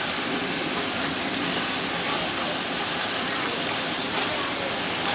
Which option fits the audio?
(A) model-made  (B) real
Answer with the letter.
B